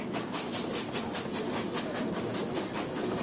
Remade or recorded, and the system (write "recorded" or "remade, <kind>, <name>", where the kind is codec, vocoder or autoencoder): recorded